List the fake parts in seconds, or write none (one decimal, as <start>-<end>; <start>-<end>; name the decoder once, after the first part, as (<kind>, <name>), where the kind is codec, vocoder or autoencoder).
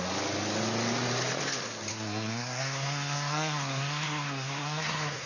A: 1.9-5.3 (codec, SNAC)